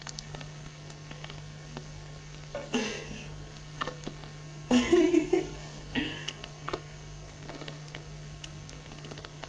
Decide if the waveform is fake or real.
fake